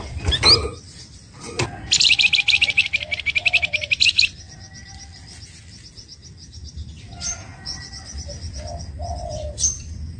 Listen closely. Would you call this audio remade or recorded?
recorded